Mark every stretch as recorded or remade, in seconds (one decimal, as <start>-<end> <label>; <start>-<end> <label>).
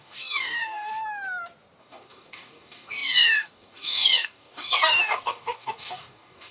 0.0-0.9 remade; 0.9-1.8 recorded; 1.8-6.5 remade